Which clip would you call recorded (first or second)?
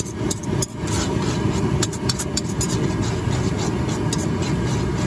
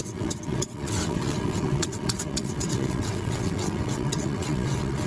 first